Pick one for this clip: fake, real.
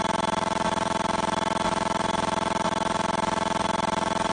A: fake